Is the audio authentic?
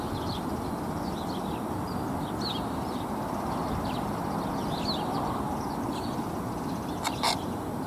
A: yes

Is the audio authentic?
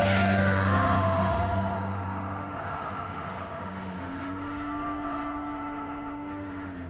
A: no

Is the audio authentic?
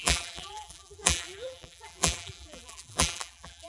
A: no